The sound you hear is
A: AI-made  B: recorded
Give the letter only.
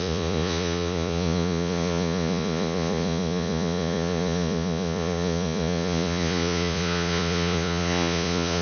A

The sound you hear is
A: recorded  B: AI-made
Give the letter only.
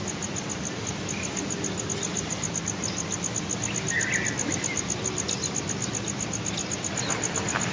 A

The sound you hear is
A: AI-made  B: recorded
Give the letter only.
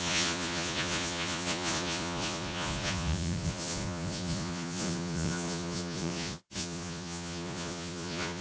A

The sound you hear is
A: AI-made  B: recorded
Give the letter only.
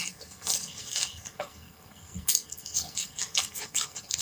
A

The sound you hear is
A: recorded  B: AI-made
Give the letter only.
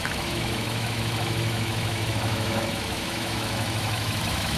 B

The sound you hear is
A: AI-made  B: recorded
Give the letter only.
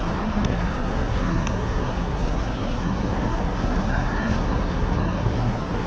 A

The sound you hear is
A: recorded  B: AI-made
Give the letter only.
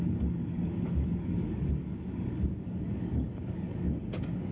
B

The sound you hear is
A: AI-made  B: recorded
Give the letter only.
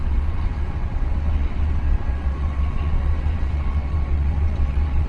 A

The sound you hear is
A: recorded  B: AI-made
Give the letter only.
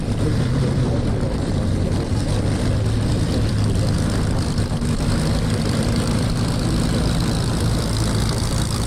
B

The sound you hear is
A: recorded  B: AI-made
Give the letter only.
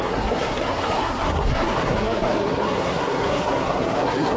B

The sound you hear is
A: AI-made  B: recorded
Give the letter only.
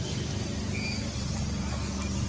B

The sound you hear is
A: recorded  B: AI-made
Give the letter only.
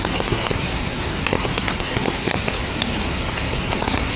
B